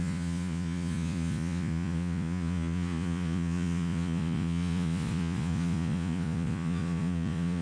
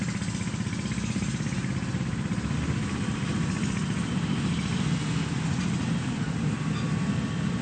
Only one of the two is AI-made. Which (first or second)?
first